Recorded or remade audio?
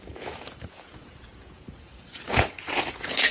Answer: remade